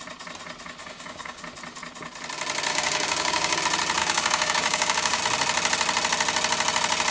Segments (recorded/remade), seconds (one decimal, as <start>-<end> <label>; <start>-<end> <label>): 0.0-0.8 recorded; 0.8-1.4 remade; 1.4-2.7 recorded; 2.7-3.6 remade; 3.6-4.0 recorded; 4.0-5.2 remade; 5.2-7.1 recorded